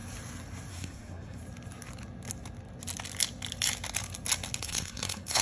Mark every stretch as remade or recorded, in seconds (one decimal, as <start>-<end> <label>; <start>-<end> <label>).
0.0-0.7 recorded; 0.7-1.4 remade; 1.4-4.6 recorded; 4.6-5.4 remade